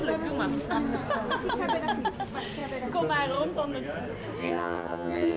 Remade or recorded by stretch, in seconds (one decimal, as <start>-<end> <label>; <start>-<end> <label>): 0.0-4.4 recorded; 4.4-5.4 remade